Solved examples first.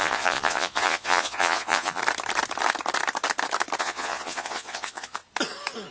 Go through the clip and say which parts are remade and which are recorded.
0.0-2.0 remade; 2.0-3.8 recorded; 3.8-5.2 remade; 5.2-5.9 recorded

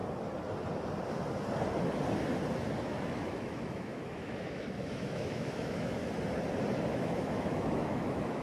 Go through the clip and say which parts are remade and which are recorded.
0.0-2.8 recorded; 2.8-6.0 remade; 6.0-6.9 recorded; 6.9-8.4 remade

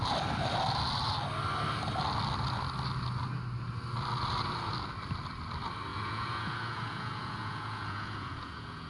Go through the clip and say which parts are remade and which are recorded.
0.0-5.9 recorded; 5.9-8.9 remade

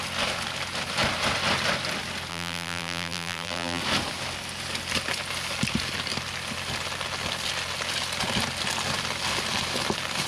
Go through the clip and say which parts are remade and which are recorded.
0.0-2.3 recorded; 2.3-3.8 remade; 3.8-10.3 recorded

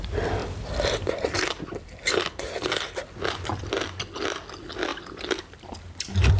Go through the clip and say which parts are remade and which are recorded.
0.0-0.4 recorded; 0.4-2.3 remade; 2.3-4.9 recorded; 4.9-5.4 remade; 5.4-6.4 recorded